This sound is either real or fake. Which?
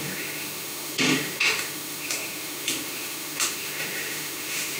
fake